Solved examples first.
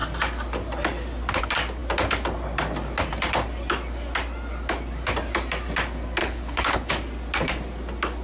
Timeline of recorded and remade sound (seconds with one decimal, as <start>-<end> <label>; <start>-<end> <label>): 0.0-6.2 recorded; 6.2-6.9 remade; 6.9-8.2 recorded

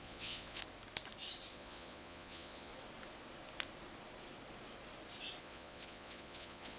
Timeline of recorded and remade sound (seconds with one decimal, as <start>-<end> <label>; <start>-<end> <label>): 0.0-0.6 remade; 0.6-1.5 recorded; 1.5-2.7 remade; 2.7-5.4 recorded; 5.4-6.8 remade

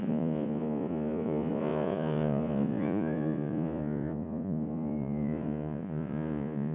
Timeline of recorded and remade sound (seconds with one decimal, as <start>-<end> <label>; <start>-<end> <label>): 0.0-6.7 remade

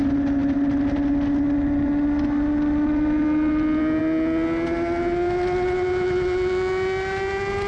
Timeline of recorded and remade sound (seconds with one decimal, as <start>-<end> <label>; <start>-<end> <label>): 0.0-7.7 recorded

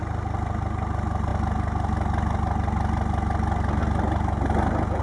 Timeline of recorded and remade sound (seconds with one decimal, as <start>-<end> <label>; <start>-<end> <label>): 0.0-5.0 recorded

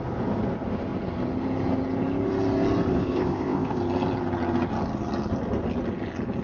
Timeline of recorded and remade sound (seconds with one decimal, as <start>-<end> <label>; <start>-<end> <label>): 0.0-2.9 recorded; 2.9-3.8 remade; 3.8-6.4 recorded

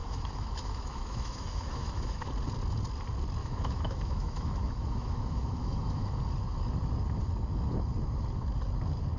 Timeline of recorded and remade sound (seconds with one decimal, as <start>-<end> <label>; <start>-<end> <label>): 0.0-2.3 remade; 2.3-3.4 recorded; 3.4-6.2 remade; 6.2-9.2 recorded

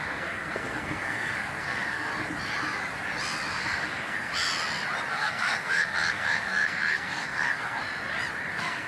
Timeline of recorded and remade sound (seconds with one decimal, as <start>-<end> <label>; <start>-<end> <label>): 0.0-2.1 remade; 2.1-3.5 recorded; 3.5-4.3 remade; 4.3-5.1 recorded; 5.1-7.8 remade; 7.8-8.5 recorded; 8.5-8.9 remade